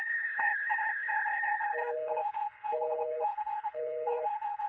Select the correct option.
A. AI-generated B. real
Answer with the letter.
A